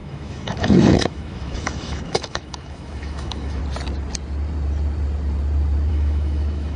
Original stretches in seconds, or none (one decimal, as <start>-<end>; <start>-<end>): 3.6-5.9